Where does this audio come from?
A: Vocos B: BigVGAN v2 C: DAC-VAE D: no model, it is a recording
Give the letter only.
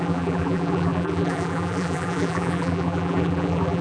B